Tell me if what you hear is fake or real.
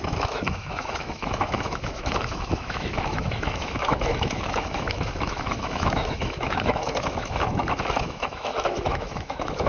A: fake